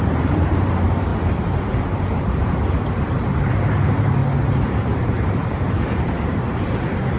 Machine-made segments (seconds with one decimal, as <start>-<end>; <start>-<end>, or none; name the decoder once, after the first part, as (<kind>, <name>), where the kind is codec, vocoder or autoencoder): 0.0-4.2 (vocoder, BigVGAN v2); 4.7-7.2